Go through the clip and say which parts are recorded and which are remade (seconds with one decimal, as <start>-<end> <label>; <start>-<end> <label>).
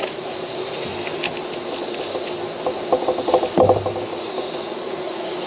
0.0-0.9 remade; 0.9-4.2 recorded; 4.2-5.5 remade